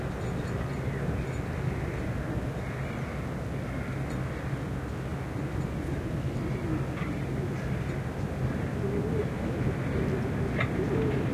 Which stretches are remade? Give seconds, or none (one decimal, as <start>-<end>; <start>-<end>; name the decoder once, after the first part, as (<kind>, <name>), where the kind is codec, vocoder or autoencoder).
none